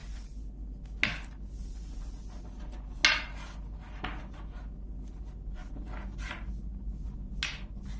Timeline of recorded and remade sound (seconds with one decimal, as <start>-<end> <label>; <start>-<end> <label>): 0.0-8.0 recorded